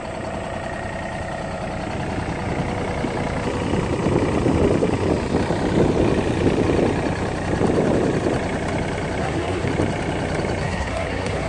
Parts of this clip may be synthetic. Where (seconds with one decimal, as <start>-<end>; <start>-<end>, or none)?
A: 9.2-9.7; 10.6-11.5